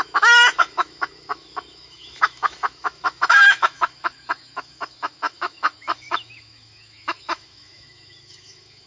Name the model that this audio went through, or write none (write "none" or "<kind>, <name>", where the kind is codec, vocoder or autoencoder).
autoencoder, DAC-VAE